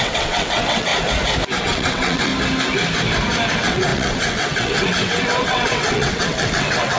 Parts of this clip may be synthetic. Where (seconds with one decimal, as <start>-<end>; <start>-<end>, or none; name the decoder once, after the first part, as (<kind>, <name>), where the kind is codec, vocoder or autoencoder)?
0.0-0.9 (vocoder, WaveNeXt); 1.6-2.3; 3.5-7.0